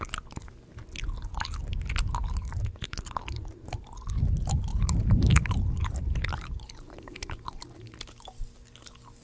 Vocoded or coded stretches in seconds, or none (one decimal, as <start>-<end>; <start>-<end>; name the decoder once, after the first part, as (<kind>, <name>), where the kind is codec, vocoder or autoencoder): 2.4-3.9 (vocoder, BigVGAN v2); 4.7-8.0